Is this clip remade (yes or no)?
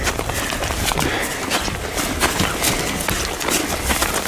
no